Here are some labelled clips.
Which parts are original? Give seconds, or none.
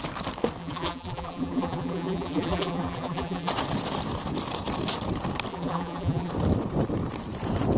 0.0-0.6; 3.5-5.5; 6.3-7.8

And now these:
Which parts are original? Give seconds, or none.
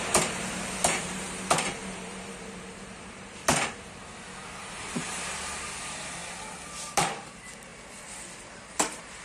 6.2-6.9; 7.7-8.4